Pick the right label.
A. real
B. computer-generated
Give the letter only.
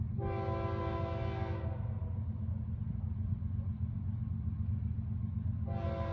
A